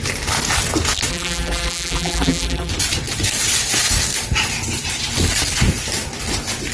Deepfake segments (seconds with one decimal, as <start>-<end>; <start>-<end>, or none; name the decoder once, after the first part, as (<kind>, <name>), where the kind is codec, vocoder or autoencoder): 1.1-2.7 (vocoder, BigVGAN v2)